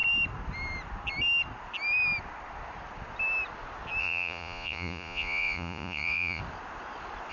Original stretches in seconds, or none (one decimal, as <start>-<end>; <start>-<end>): 0.0-4.0; 6.4-7.3